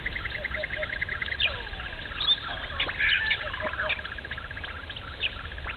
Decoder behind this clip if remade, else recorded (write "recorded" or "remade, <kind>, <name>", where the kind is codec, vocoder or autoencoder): recorded